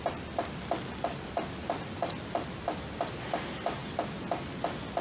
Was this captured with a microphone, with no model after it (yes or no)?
yes